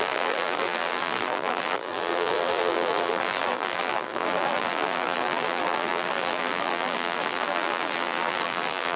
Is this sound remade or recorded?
remade